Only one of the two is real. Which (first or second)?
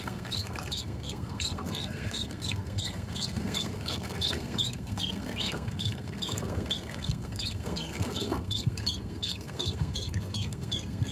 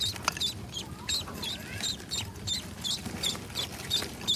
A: second